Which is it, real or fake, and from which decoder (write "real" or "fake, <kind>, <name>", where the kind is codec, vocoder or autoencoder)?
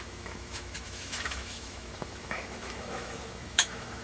fake, autoencoder, DAC-VAE